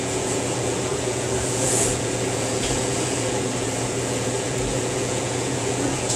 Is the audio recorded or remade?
remade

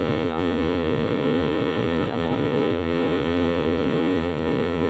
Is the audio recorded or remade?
remade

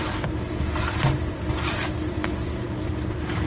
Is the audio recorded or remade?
recorded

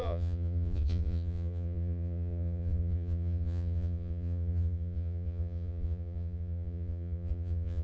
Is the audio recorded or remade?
remade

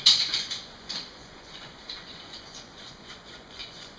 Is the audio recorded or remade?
remade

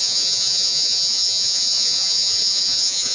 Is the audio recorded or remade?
remade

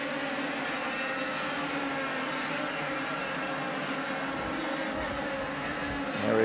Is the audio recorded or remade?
recorded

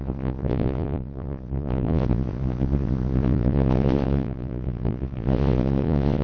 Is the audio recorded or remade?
remade